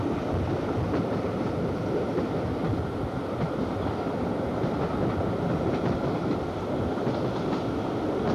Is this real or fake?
real